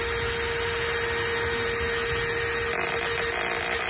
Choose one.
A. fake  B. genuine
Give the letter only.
B